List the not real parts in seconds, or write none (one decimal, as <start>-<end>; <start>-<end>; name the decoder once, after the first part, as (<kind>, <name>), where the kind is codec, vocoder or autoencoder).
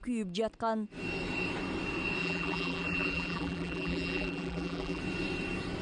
2.2-5.0 (vocoder, BigVGAN v2)